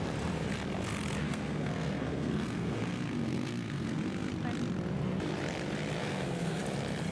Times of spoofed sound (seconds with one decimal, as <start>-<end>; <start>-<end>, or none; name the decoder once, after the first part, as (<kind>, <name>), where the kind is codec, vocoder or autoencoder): 1.2-4.3 (codec, SNAC); 6.0-6.6